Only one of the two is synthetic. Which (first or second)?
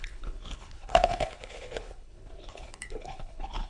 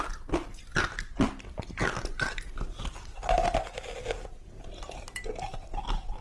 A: first